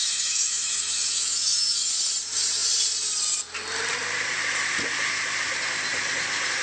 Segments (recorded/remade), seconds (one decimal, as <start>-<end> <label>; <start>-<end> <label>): 0.0-1.9 remade; 1.9-6.6 recorded